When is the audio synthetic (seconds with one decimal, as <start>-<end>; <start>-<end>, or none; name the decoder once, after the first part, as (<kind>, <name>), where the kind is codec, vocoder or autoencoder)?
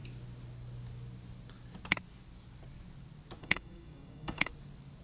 3.4-4.5 (codec, DAC)